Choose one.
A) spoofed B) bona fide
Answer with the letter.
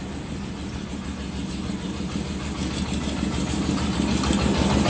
B